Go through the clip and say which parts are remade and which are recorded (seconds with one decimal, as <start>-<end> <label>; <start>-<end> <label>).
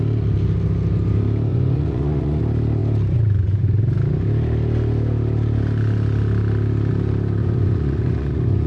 0.0-1.5 recorded; 1.5-2.4 remade; 2.4-7.4 recorded; 7.4-8.7 remade